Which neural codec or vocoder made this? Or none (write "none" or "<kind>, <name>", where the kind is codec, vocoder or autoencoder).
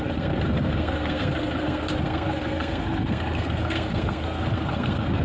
codec, SNAC